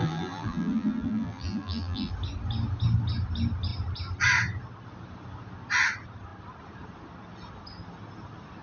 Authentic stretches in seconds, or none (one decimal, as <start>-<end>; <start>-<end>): 2.1-8.6